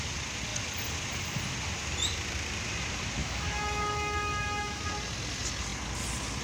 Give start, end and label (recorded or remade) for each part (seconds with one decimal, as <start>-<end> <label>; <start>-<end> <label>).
0.0-3.2 recorded; 3.2-4.8 remade; 4.8-6.4 recorded